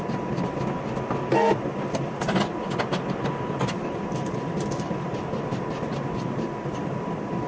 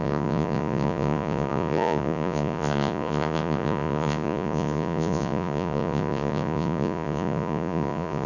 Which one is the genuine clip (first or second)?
first